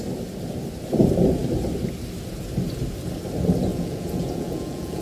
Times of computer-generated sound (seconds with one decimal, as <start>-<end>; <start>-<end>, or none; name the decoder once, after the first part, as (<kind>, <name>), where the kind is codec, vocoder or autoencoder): 3.7-5.0 (vocoder, Vocos)